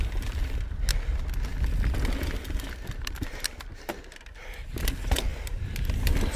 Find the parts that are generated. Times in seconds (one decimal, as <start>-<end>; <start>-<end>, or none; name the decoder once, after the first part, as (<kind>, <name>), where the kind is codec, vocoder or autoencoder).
5.3-6.4 (vocoder, BigVGAN v2)